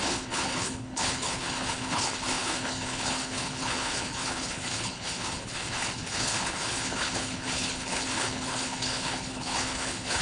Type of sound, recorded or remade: remade